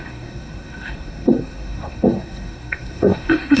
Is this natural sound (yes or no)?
no